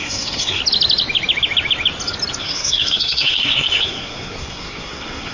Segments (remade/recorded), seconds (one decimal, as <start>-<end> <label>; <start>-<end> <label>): 0.0-0.6 remade; 0.6-2.4 recorded; 2.4-5.3 remade

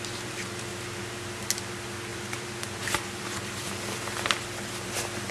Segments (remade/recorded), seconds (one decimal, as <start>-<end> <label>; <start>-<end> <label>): 0.0-2.1 recorded; 2.1-3.7 remade; 3.7-5.3 recorded

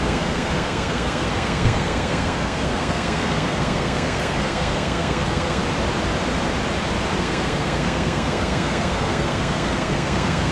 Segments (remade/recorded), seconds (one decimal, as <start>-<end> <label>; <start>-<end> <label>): 0.0-5.6 remade; 5.6-7.2 recorded; 7.2-10.5 remade

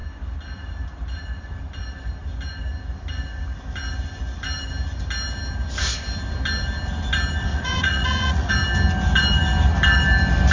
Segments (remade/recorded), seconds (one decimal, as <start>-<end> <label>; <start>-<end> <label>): 0.0-7.5 recorded; 7.5-8.5 remade; 8.5-10.5 recorded

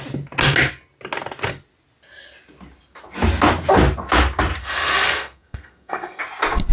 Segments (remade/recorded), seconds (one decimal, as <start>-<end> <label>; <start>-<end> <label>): 0.0-4.6 recorded; 4.6-6.2 remade; 6.2-6.7 recorded

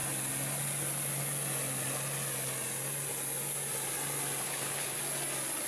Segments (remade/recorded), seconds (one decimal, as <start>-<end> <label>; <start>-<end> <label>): 0.0-4.4 recorded; 4.4-5.0 remade; 5.0-5.7 recorded

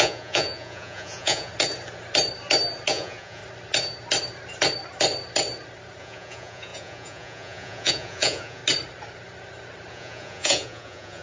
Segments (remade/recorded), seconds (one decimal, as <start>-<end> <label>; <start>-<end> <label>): 0.0-1.5 remade; 1.5-2.9 recorded; 2.9-3.4 remade; 3.4-6.0 recorded; 6.0-8.6 remade; 8.6-9.9 recorded; 9.9-11.2 remade

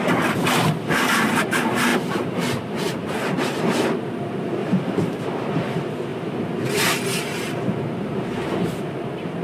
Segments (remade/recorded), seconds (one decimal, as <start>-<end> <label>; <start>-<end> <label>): 0.0-1.9 recorded; 1.9-3.6 remade; 3.6-4.6 recorded; 4.6-5.2 remade; 5.2-9.4 recorded